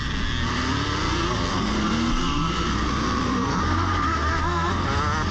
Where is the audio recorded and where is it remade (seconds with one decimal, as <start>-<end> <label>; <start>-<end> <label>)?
0.0-1.5 recorded; 1.5-4.7 remade; 4.7-5.3 recorded